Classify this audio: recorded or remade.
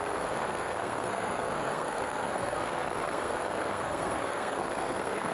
remade